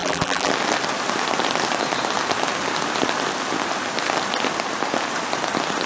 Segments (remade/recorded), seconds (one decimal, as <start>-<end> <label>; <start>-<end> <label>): 0.0-0.5 remade; 0.5-5.9 recorded

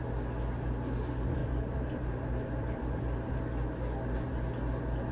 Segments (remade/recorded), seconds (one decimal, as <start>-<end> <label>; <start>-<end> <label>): 0.0-1.4 recorded; 1.4-3.4 remade; 3.4-5.1 recorded

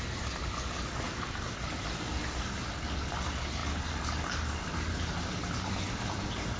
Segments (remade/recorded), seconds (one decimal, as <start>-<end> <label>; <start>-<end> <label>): 0.0-6.6 recorded

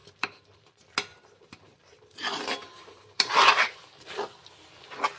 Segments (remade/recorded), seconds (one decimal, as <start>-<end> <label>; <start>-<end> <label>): 0.0-0.7 remade; 0.7-1.1 recorded; 1.1-4.2 remade; 4.2-5.2 recorded

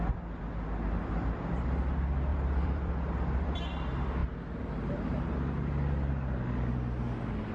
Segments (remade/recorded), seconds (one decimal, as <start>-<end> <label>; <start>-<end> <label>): 0.0-2.3 recorded; 2.3-3.6 remade; 3.6-7.5 recorded

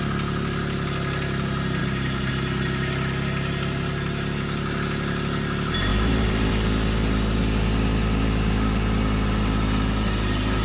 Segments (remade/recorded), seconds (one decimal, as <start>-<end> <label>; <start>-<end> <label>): 0.0-1.8 recorded; 1.8-2.3 remade; 2.3-5.9 recorded; 5.9-6.5 remade; 6.5-10.6 recorded

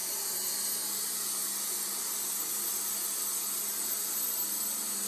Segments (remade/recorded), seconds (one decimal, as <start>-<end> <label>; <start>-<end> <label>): 0.0-0.7 remade; 0.7-5.1 recorded